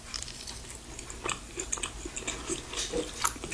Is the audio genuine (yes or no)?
yes